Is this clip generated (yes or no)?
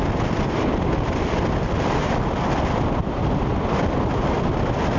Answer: no